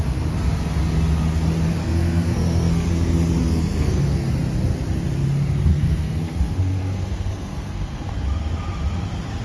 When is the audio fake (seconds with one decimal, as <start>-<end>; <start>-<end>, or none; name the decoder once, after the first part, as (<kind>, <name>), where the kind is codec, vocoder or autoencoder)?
1.8-2.9 (codec, SNAC); 3.4-4.0; 5.7-8.1